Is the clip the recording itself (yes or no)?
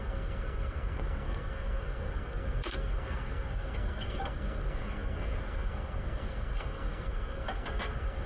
no